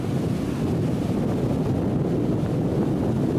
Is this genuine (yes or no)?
yes